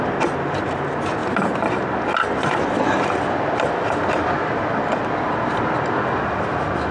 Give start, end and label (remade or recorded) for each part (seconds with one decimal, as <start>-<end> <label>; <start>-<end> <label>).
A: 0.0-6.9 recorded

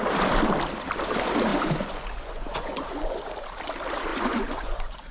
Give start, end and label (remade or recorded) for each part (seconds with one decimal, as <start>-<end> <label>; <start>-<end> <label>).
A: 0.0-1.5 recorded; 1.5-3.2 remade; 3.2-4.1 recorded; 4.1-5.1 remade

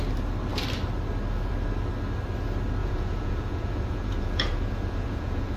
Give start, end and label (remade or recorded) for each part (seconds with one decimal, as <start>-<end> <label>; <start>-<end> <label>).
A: 0.0-2.8 recorded; 2.8-5.6 remade

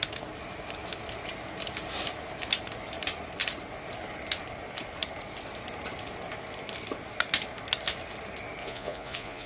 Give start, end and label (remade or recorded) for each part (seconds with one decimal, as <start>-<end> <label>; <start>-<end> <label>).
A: 0.0-8.6 recorded; 8.6-9.5 remade